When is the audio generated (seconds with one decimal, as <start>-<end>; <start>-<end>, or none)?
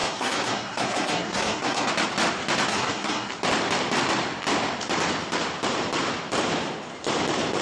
0.0-1.9; 2.7-3.3